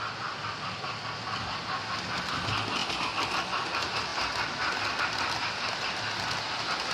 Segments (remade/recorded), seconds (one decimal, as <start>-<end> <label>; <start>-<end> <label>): 0.0-6.9 recorded